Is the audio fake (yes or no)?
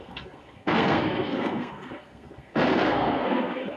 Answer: yes